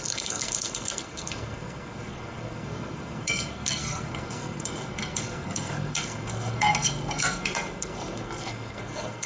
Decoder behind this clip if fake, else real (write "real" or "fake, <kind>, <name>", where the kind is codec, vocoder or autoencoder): fake, codec, SNAC